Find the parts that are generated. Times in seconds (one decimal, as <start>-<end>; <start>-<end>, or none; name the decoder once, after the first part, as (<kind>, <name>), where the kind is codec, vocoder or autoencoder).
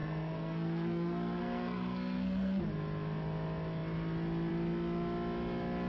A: 0.0-2.6 (codec, SNAC)